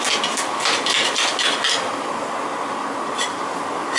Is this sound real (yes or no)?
yes